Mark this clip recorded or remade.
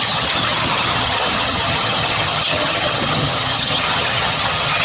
remade